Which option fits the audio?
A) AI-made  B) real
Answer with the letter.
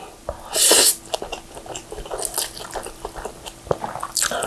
B